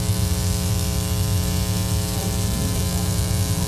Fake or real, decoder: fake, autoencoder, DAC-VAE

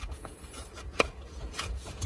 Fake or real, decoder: fake, vocoder, Vocos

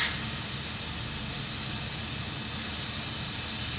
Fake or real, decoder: real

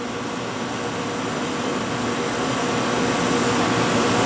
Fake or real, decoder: real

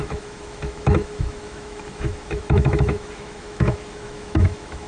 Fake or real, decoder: fake, autoencoder, DAC-VAE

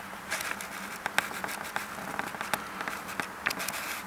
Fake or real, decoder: real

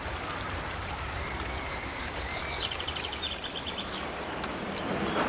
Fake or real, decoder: fake, vocoder, BigVGAN v2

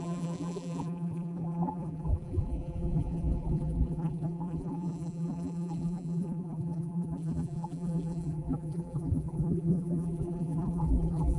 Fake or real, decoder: fake, vocoder, BigVGAN v2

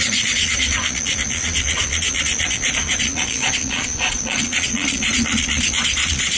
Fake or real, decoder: fake, vocoder, Vocos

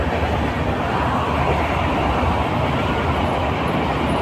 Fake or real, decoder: real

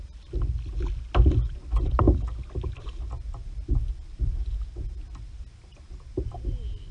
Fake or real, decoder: real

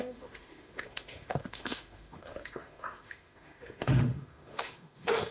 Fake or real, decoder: fake, autoencoder, DAC-VAE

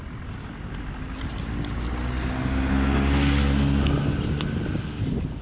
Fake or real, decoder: real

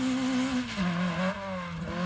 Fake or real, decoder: real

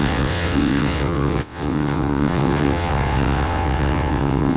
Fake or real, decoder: fake, vocoder, WaveNeXt